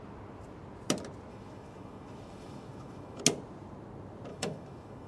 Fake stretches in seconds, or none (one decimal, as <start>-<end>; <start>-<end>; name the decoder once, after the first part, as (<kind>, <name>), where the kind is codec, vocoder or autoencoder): 1.3-3.2 (autoencoder, DAC-VAE); 4.3-5.1